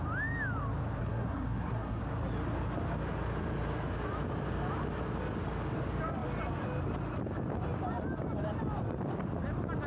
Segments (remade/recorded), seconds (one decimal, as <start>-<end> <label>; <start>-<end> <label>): 0.0-1.0 recorded; 1.0-2.0 remade; 2.0-9.9 recorded